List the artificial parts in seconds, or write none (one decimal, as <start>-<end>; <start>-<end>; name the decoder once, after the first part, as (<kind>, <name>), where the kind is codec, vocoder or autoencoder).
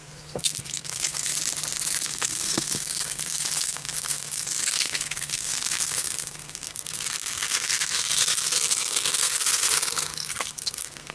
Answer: 0.0-1.3 (codec, SNAC); 2.0-11.1